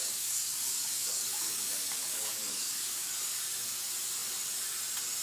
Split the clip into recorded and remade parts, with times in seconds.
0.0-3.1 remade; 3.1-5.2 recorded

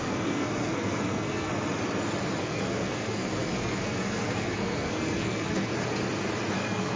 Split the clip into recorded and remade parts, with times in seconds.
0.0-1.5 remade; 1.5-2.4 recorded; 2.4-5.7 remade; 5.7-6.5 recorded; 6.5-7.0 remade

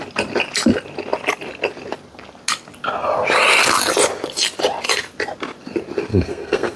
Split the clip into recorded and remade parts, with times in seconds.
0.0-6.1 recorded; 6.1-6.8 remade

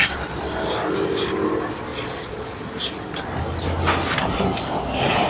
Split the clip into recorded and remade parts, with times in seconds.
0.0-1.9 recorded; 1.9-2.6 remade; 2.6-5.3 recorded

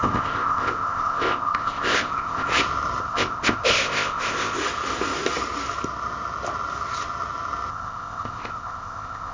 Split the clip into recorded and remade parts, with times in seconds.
0.0-2.5 remade; 2.5-3.0 recorded; 3.0-4.6 remade; 4.6-7.7 recorded; 7.7-9.3 remade